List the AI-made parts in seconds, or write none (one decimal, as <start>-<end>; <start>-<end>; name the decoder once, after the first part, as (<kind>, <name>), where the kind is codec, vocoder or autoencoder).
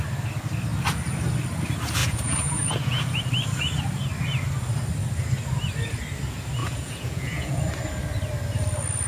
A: 2.0-3.2 (vocoder, Vocos); 6.6-7.6